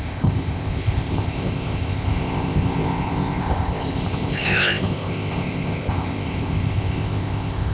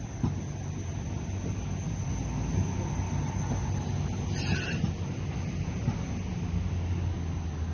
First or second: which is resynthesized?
first